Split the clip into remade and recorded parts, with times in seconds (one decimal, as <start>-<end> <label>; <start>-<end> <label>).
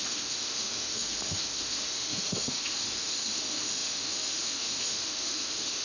0.0-5.8 remade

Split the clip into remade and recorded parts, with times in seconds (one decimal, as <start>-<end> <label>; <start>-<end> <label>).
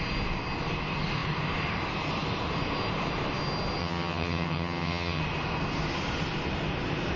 0.0-3.8 recorded; 3.8-5.2 remade; 5.2-7.2 recorded